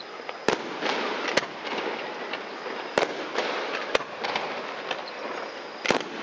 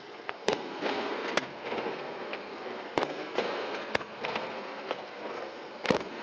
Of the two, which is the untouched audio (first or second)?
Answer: first